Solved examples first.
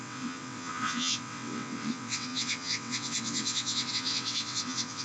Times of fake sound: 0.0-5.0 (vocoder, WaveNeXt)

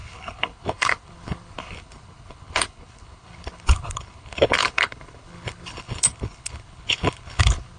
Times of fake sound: 0.0-7.8 (codec, HILCodec)

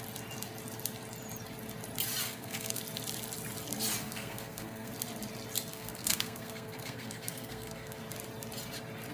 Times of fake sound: 2.2-2.8 (codec, SNAC); 4.0-4.9; 5.7-8.0

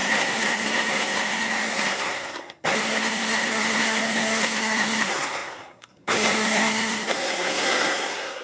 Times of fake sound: 0.0-8.4 (codec, SNAC)

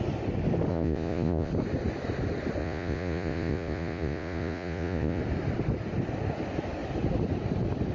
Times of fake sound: 0.7-1.5 (vocoder, Vocos); 2.6-5.2

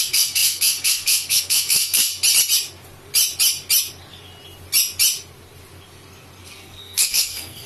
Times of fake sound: 0.0-2.1 (codec, SNAC); 6.4-7.7